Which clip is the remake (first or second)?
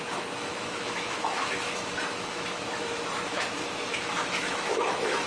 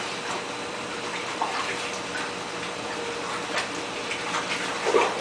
first